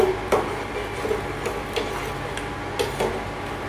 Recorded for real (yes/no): yes